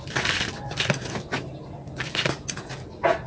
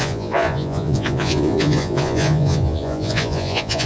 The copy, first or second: second